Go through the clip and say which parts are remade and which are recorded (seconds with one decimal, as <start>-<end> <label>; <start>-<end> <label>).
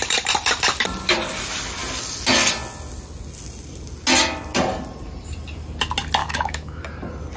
0.0-6.2 recorded; 6.2-6.8 remade; 6.8-7.4 recorded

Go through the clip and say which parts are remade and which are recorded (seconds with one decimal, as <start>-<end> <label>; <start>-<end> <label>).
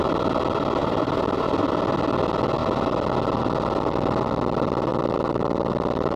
0.0-0.8 recorded; 0.8-1.7 remade; 1.7-6.2 recorded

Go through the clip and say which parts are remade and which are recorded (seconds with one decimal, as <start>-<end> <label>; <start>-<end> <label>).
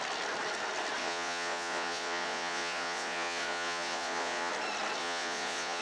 0.0-1.0 recorded; 1.0-4.5 remade; 4.5-5.0 recorded; 5.0-5.8 remade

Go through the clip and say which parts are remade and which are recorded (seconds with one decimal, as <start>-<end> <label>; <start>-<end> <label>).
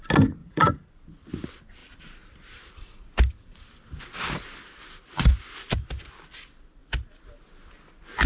0.0-0.4 recorded; 0.4-0.9 remade; 0.9-8.3 recorded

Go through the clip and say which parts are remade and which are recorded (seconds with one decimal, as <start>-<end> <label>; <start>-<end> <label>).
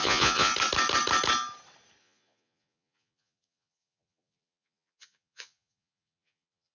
0.0-0.5 remade; 0.5-2.0 recorded; 2.0-6.7 remade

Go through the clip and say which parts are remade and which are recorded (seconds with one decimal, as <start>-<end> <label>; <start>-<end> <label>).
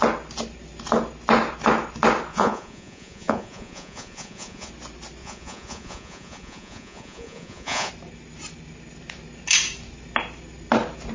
0.0-2.3 recorded; 2.3-4.7 remade; 4.7-5.2 recorded; 5.2-7.9 remade; 7.9-11.1 recorded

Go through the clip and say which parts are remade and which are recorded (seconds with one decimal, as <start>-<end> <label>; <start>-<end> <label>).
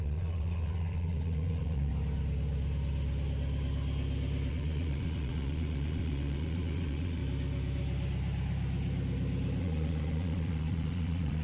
0.0-1.9 remade; 1.9-4.5 recorded; 4.5-7.2 remade; 7.2-9.6 recorded; 9.6-11.4 remade